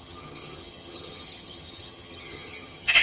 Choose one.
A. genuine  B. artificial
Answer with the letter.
B